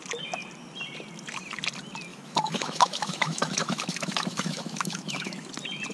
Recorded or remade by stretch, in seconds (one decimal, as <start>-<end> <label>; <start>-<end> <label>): 0.0-2.1 recorded; 2.1-5.5 remade; 5.5-5.9 recorded